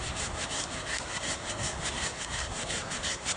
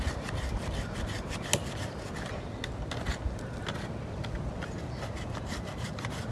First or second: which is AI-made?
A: first